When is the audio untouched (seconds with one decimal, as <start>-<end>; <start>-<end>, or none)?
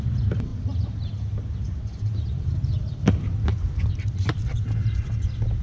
0.0-5.6